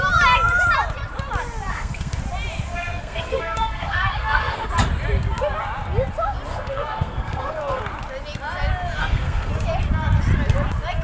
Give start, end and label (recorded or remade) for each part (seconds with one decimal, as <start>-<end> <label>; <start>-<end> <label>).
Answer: 0.0-1.7 recorded; 1.7-2.2 remade; 2.2-2.7 recorded; 2.7-4.7 remade; 4.7-6.5 recorded; 6.5-7.8 remade; 7.8-9.0 recorded; 9.0-9.5 remade; 9.5-11.0 recorded